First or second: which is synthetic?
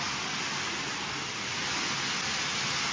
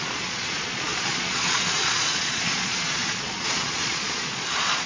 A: second